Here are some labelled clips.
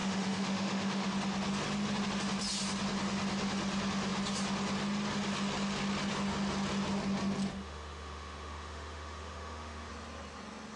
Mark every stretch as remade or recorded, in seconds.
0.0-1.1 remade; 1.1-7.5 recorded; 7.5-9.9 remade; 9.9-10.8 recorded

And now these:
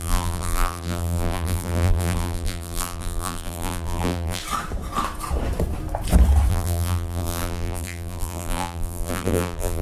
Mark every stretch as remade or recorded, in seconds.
0.0-4.4 remade; 4.4-6.5 recorded; 6.5-9.8 remade

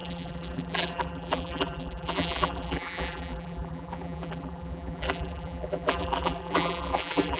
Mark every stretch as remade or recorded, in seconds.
0.0-7.4 remade

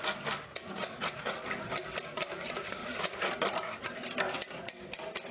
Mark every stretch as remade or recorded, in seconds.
0.0-0.5 recorded; 0.5-1.3 remade; 1.3-2.8 recorded; 2.8-3.3 remade; 3.3-5.3 recorded

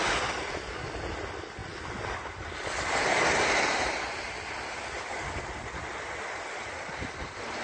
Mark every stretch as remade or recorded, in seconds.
0.0-7.6 recorded

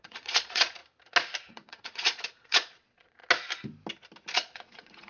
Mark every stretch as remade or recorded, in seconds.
0.0-0.8 remade; 0.8-1.5 recorded; 1.5-3.2 remade; 3.2-4.3 recorded; 4.3-5.1 remade

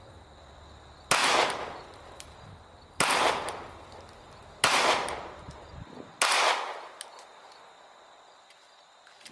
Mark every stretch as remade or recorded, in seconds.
0.0-9.3 recorded

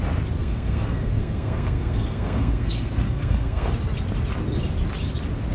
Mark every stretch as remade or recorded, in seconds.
0.0-0.4 recorded; 0.4-3.7 remade; 3.7-5.5 recorded